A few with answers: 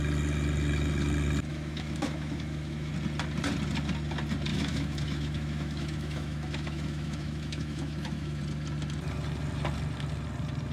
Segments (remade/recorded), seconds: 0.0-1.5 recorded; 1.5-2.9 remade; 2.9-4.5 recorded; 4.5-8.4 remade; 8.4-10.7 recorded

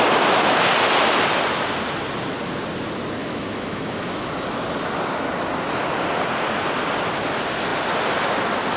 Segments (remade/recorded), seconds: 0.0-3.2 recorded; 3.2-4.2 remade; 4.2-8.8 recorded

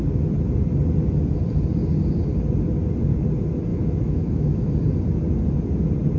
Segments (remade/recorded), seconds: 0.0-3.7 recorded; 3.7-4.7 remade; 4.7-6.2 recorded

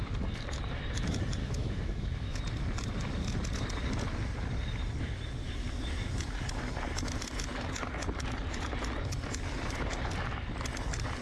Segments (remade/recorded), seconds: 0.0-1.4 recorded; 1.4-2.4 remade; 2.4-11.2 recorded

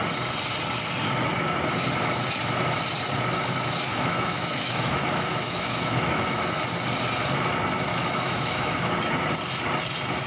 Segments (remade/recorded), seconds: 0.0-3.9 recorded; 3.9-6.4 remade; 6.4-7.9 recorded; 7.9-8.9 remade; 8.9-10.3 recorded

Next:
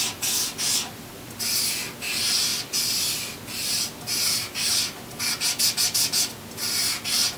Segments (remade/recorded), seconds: 0.0-7.4 recorded

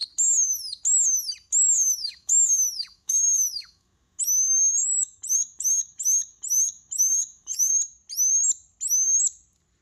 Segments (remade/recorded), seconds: 0.0-1.8 recorded; 1.8-4.2 remade; 4.2-4.8 recorded; 4.8-7.7 remade; 7.7-9.8 recorded